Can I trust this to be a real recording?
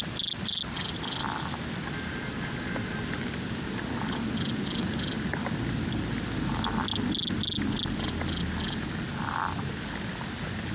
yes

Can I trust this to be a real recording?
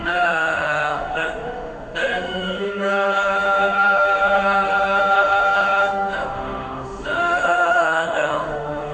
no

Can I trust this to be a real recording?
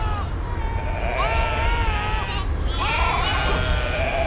yes